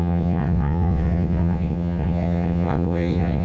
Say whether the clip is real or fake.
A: fake